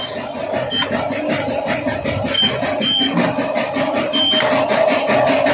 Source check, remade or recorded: recorded